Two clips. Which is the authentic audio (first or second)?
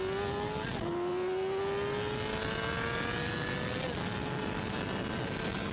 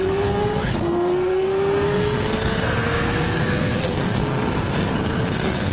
first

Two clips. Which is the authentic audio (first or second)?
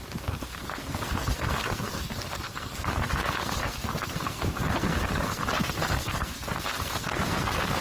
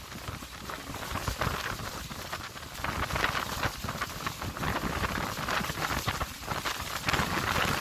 second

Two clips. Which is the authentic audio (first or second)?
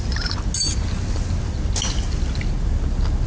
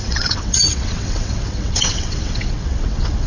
first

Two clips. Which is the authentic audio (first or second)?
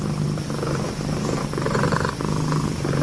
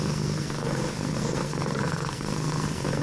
first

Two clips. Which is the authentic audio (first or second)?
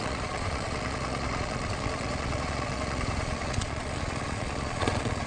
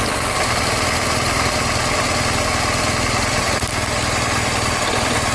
second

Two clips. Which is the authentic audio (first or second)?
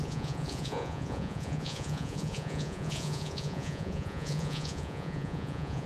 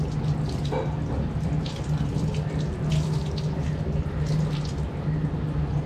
second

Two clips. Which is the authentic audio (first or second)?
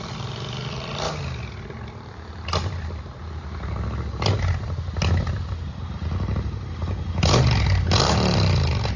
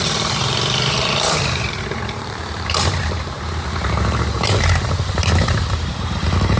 first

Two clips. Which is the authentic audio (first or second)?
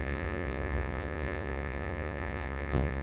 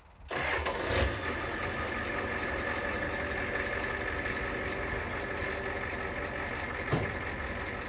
second